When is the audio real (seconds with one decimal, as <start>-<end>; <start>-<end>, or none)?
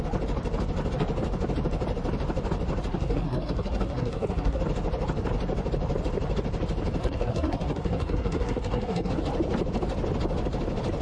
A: 0.0-2.9; 4.6-7.0; 9.1-11.0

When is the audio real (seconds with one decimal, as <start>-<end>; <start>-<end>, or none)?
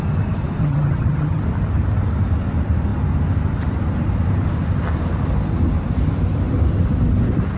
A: 0.0-0.6; 1.4-7.6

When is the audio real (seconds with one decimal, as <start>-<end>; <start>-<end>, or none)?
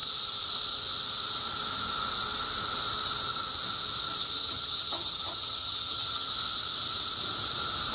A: 0.0-4.2; 6.3-7.9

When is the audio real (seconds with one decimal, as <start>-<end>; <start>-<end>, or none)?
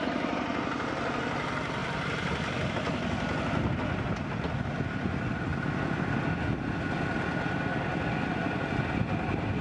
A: 0.0-1.8; 2.7-9.6